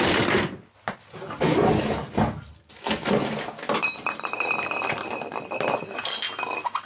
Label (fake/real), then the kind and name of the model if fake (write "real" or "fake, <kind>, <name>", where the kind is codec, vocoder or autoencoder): fake, vocoder, BigVGAN v2